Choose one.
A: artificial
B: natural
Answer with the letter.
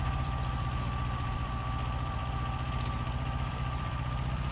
A